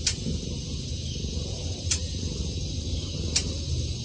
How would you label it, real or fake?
real